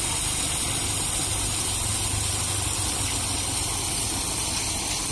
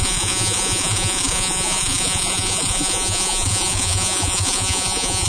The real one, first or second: first